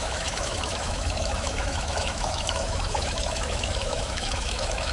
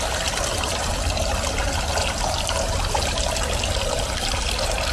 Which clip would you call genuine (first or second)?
second